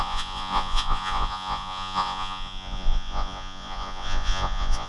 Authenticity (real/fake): fake